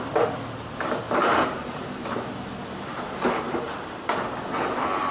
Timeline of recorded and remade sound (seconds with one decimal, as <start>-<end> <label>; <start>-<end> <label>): 0.0-1.2 recorded; 1.2-4.3 remade; 4.3-5.1 recorded